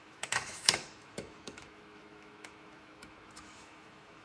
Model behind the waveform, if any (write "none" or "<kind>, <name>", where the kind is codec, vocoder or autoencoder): autoencoder, DAC-VAE